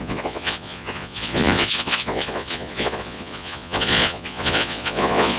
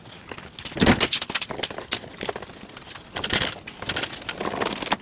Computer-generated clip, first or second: first